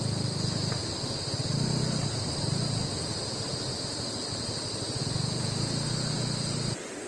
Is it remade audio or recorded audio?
recorded